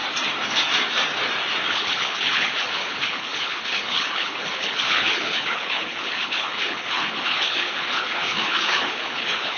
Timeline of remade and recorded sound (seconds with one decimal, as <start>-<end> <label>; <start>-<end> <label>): 0.0-1.7 recorded; 1.7-9.6 remade